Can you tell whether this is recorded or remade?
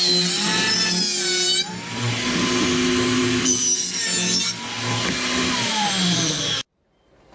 recorded